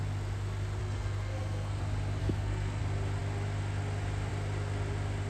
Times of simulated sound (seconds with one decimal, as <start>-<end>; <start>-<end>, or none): 0.8-1.8; 2.2-2.8